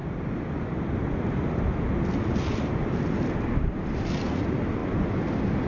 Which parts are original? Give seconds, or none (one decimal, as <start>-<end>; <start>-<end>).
0.0-5.7